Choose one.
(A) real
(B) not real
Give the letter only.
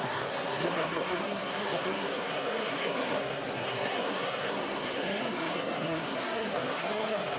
B